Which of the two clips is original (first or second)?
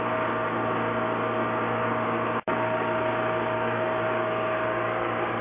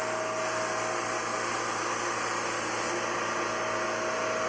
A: second